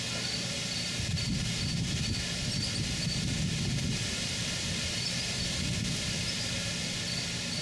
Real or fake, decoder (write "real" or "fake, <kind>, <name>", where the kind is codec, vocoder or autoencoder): real